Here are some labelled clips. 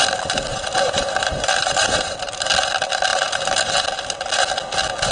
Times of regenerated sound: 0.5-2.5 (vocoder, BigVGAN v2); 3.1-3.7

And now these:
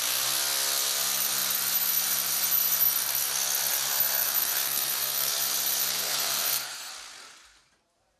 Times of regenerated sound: 4.2-5.3 (codec, SNAC); 5.8-6.9

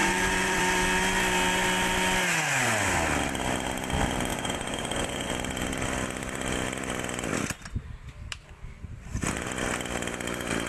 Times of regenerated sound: 0.0-0.6 (vocoder, Vocos); 4.3-5.3

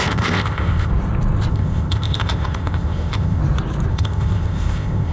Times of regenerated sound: 0.0-0.9 (codec, ZipCodec); 1.5-3.4; 3.9-5.1

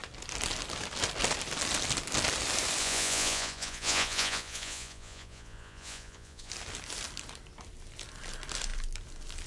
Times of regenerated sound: 2.8-6.5 (vocoder, Vocos)

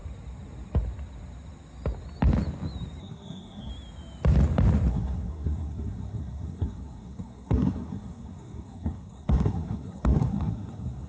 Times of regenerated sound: 3.0-3.7 (codec, SNAC); 4.9-11.1

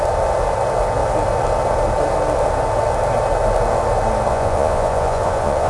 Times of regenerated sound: 4.3-5.7 (vocoder, Vocos)

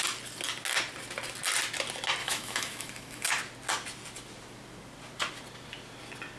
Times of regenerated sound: 2.2-3.3 (autoencoder, DAC-VAE)